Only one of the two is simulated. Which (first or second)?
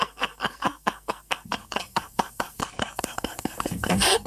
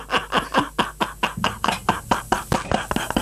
first